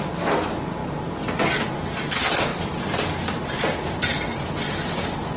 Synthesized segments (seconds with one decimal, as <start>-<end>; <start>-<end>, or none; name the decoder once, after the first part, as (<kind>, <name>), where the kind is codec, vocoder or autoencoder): 0.8-1.9 (vocoder, BigVGAN v2); 2.5-3.3; 4.1-5.0